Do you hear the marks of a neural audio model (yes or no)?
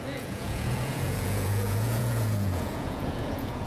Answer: yes